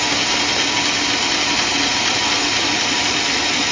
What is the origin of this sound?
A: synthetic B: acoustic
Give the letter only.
B